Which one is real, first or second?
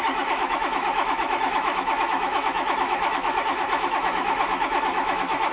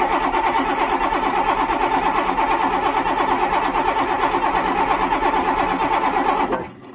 second